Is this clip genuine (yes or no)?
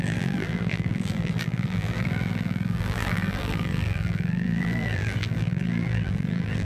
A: no